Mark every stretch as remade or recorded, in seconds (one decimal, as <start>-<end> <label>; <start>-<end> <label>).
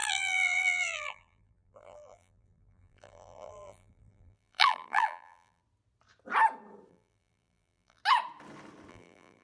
0.0-5.6 remade; 5.6-6.9 recorded; 6.9-8.0 remade; 8.0-8.9 recorded; 8.9-9.4 remade